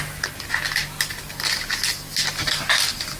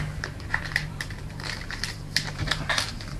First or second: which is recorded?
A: first